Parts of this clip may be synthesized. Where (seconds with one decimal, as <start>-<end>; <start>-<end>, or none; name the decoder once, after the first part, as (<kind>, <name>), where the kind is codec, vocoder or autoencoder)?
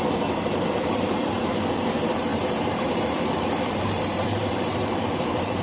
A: 0.0-5.6 (vocoder, BigVGAN v2)